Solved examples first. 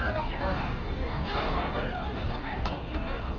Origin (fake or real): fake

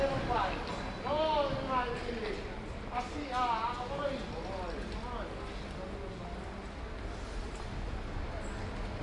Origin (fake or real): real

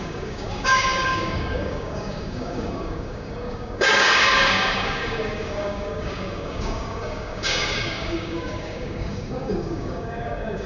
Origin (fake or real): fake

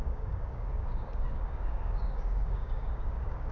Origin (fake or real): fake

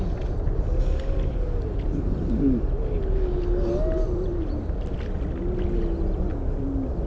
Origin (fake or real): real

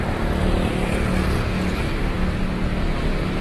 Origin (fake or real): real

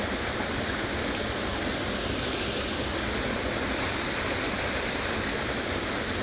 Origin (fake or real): real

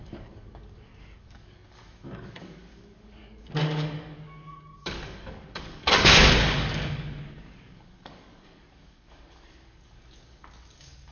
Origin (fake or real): fake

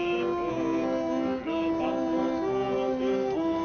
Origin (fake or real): real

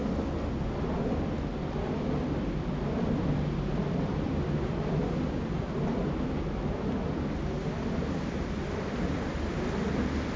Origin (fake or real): real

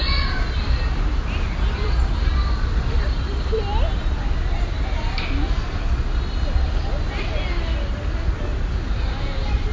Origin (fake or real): real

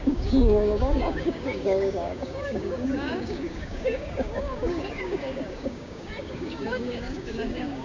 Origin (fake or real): fake